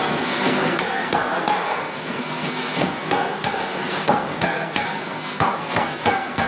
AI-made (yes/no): yes